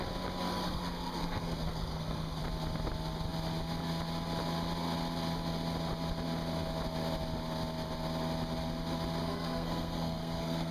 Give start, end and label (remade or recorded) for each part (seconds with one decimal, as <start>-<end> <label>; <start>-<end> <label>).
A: 0.0-0.5 recorded; 0.5-2.4 remade; 2.4-9.2 recorded; 9.2-10.7 remade